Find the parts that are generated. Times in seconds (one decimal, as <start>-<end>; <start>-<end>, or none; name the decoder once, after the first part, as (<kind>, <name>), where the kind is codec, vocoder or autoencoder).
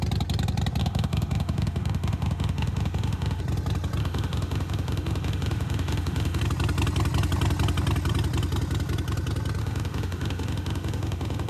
0.8-3.4 (autoencoder, DAC-VAE); 4.0-6.4; 9.6-11.5